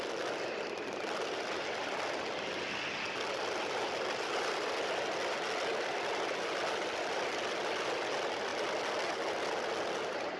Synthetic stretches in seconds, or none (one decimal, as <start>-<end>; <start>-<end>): none